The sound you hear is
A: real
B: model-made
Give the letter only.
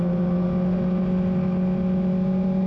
A